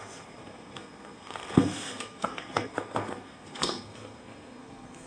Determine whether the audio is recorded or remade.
remade